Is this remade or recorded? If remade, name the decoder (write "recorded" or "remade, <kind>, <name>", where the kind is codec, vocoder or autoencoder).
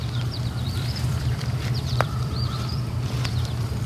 remade, vocoder, BigVGAN v2